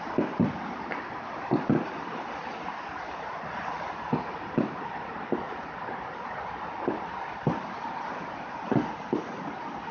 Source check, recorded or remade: recorded